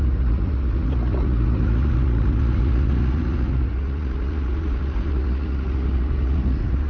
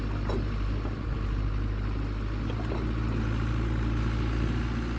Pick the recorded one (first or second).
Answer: second